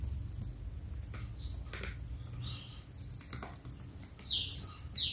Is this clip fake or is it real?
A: real